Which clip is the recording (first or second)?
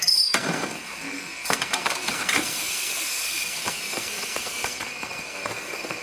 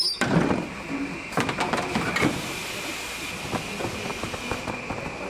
second